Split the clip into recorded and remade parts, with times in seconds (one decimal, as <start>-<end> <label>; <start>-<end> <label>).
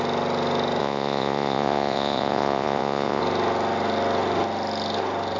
0.0-0.8 recorded; 0.8-3.2 remade; 3.2-5.4 recorded